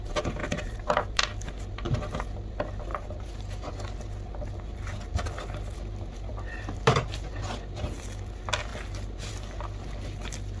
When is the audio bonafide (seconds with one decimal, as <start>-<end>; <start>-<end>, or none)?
0.0-0.4; 1.2-2.9; 3.7-6.3; 7.4-10.6